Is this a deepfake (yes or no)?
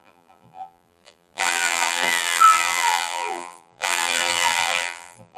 yes